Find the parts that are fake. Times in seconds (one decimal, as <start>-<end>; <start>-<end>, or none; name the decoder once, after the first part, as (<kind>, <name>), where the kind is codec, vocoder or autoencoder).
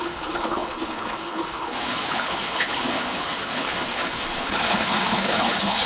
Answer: 0.0-5.9 (codec, HILCodec)